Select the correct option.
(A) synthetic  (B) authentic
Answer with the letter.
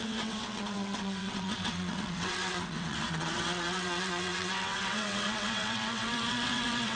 A